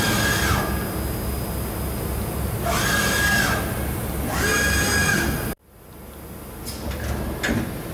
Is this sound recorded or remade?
recorded